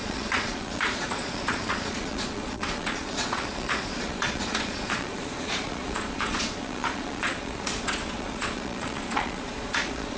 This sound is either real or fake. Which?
fake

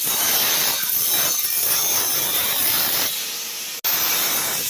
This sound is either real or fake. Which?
real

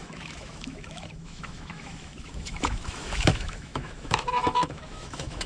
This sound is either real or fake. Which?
fake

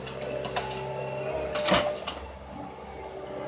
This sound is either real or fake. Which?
real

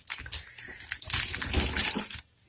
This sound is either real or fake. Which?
real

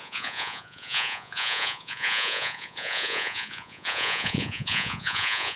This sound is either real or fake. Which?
fake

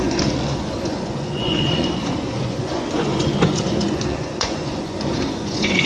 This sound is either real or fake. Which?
fake